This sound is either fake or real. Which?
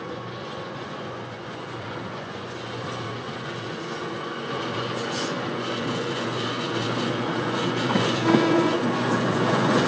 fake